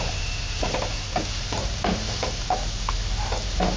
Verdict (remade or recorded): recorded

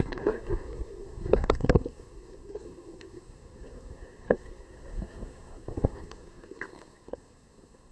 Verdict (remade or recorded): remade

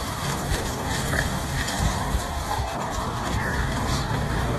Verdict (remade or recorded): remade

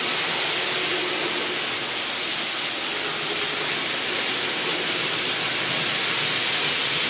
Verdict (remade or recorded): recorded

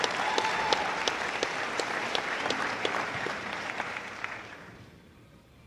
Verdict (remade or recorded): remade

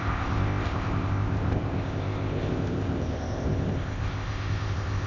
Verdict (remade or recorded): remade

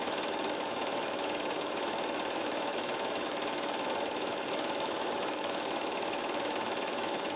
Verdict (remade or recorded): remade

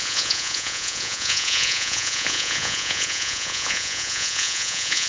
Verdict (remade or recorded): remade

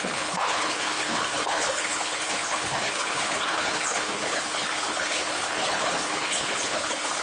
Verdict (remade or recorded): remade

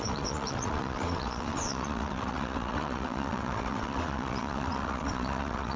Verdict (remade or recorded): remade